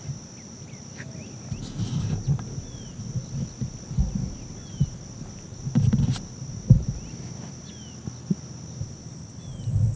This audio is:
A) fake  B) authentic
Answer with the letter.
B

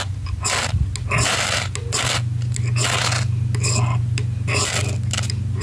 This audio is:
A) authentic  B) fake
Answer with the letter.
A